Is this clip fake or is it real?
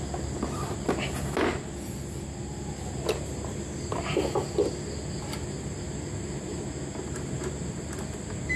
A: real